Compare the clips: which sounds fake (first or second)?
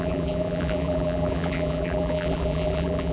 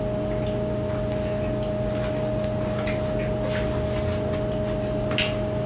first